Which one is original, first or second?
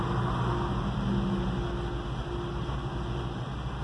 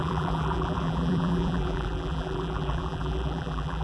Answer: first